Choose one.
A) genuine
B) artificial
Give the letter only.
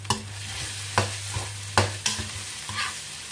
A